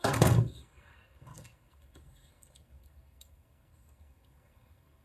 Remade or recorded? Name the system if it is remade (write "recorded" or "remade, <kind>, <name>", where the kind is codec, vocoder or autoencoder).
remade, codec, SNAC